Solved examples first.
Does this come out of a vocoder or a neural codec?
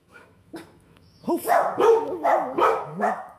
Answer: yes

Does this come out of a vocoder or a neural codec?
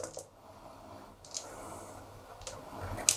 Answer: no